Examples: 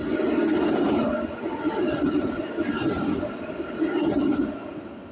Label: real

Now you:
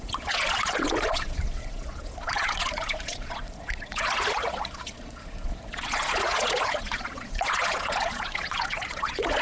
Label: fake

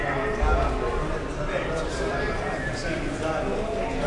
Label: real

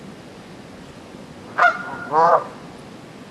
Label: fake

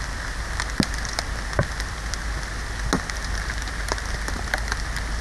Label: real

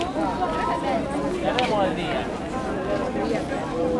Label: real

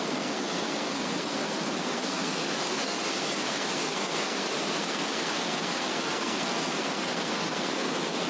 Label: fake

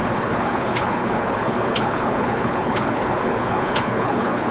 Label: fake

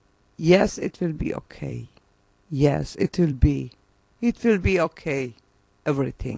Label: fake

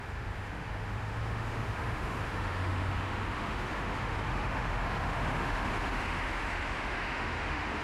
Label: fake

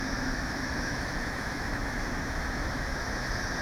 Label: fake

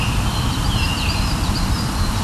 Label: real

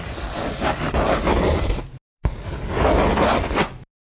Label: real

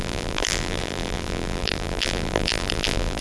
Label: fake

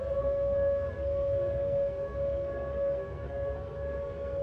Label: fake